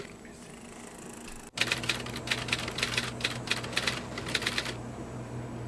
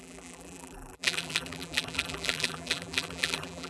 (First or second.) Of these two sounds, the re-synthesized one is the second